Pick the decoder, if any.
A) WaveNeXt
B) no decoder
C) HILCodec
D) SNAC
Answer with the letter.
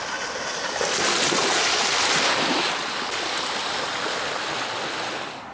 B